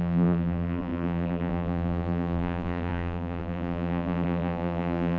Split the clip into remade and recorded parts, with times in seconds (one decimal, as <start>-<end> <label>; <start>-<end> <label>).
0.0-5.2 remade